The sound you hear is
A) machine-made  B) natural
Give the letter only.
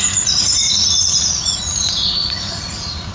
A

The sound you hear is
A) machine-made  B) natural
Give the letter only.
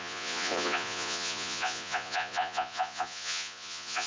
A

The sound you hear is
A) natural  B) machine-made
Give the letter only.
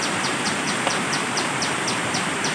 B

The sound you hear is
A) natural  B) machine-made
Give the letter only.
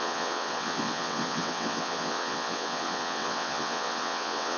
B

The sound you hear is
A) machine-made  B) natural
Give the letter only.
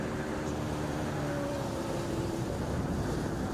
A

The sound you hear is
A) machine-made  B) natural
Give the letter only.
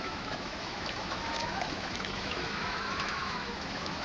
A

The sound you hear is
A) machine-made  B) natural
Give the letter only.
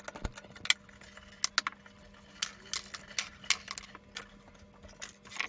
B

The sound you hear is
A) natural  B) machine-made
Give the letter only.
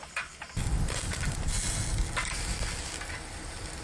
A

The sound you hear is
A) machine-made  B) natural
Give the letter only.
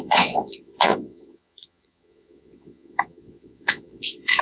A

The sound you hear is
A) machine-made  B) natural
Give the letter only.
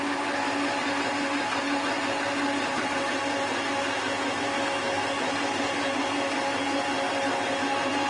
B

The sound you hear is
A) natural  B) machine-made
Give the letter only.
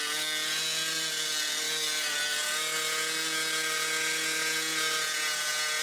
A